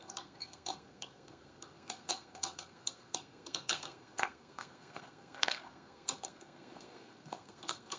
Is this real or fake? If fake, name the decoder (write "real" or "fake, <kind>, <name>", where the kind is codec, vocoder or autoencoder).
fake, codec, SNAC